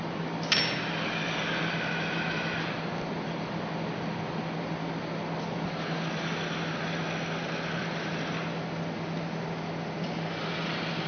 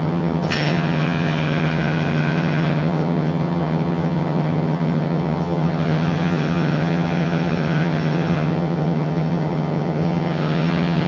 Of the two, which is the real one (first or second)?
first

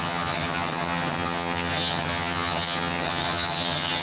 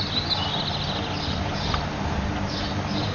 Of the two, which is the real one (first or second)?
second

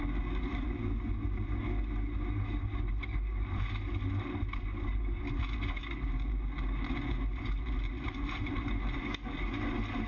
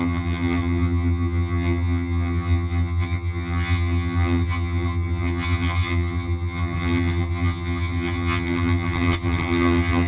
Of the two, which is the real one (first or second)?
first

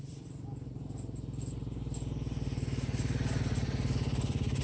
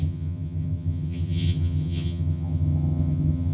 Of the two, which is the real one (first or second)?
first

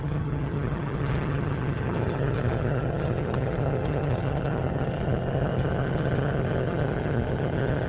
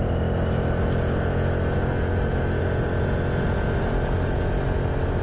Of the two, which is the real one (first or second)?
second